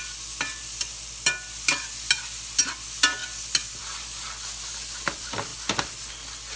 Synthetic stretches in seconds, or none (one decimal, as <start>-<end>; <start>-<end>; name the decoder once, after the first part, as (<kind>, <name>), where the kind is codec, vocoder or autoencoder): none